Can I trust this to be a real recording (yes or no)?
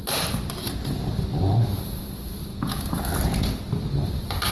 yes